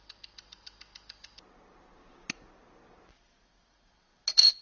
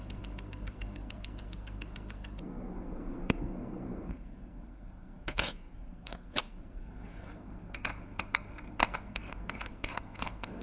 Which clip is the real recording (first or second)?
first